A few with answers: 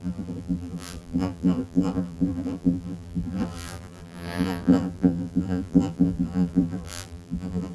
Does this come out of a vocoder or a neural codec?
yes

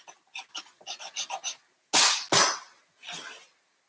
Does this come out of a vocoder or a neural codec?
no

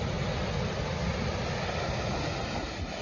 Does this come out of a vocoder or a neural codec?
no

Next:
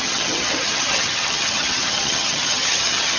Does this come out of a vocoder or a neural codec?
yes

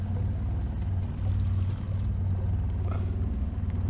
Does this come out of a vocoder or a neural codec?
no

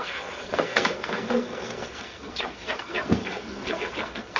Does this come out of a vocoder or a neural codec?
yes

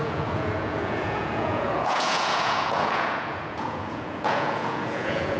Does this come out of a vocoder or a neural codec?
yes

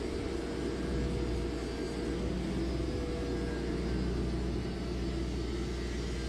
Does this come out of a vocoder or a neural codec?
no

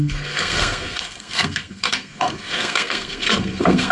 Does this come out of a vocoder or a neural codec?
yes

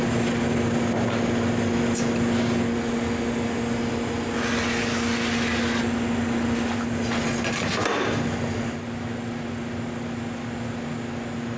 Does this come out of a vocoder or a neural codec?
no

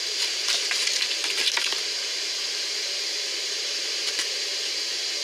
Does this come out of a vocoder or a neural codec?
yes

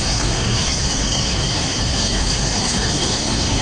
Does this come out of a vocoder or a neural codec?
yes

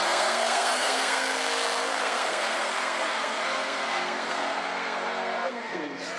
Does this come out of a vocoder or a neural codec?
yes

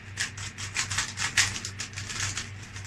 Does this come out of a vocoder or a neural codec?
no